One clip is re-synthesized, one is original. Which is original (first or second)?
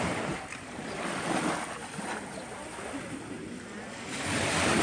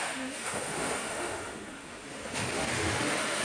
first